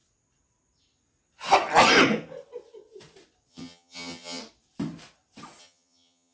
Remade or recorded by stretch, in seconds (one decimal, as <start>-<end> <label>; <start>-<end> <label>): 0.0-3.5 recorded; 3.5-4.4 remade; 4.4-5.6 recorded; 5.6-6.3 remade

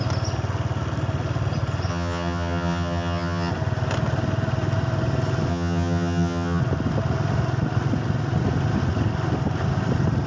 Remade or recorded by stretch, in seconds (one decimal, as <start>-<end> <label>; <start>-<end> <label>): 0.0-1.9 recorded; 1.9-3.5 remade; 3.5-5.5 recorded; 5.5-6.6 remade; 6.6-10.3 recorded

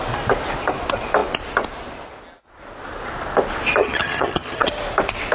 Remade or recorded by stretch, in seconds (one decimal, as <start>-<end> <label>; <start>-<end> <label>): 0.0-3.8 recorded; 3.8-4.7 remade; 4.7-5.3 recorded

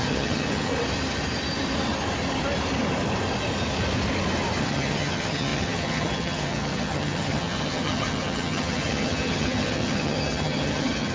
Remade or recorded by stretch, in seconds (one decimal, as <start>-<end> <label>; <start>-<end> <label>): 0.0-0.7 remade; 0.7-4.6 recorded; 4.6-11.1 remade

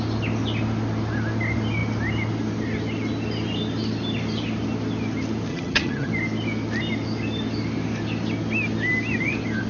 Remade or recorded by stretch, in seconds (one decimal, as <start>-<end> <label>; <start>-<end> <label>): 0.0-5.5 recorded; 5.5-6.1 remade; 6.1-9.7 recorded

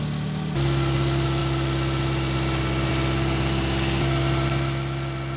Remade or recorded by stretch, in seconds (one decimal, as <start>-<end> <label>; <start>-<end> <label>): 0.0-5.4 recorded

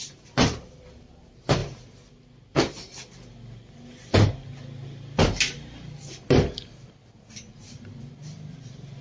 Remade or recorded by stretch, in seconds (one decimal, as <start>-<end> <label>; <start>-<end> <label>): 0.0-9.0 recorded

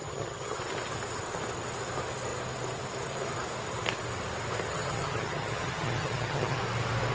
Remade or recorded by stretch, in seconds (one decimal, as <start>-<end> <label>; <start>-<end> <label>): 0.0-0.6 remade; 0.6-4.7 recorded; 4.7-6.6 remade; 6.6-7.1 recorded